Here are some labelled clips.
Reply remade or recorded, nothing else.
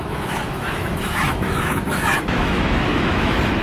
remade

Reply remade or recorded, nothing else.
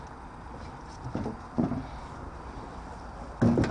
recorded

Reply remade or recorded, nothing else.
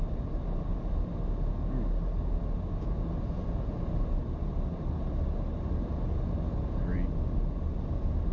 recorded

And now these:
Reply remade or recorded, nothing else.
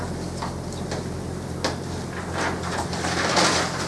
recorded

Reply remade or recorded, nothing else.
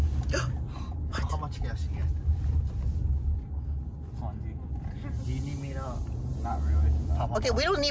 recorded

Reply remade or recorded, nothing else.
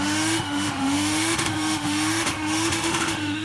remade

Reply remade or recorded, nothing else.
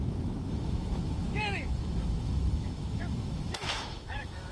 remade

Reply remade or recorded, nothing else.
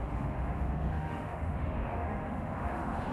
remade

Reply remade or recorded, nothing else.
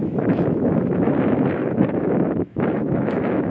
remade